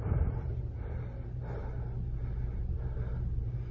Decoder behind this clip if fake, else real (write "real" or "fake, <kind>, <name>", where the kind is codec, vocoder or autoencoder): real